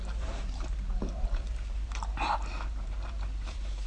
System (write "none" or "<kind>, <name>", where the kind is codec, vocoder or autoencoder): vocoder, BigVGAN v2